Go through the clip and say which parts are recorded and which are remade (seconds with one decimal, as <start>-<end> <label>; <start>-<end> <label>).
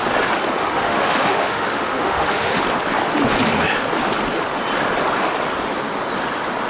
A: 0.0-0.6 recorded; 0.6-2.6 remade; 2.6-6.7 recorded